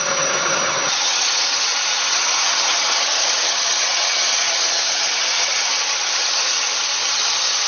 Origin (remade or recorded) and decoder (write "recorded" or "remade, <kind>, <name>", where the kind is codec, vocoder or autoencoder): remade, vocoder, HiFi-GAN